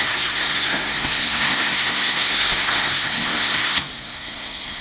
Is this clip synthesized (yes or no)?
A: yes